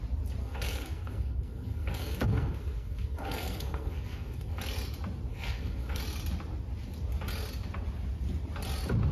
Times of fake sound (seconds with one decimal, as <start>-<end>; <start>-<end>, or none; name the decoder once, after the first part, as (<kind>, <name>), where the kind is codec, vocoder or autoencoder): 0.4-4.6 (codec, SNAC); 5.3-6.0